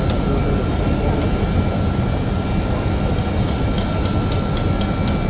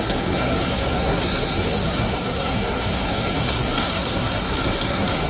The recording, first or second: first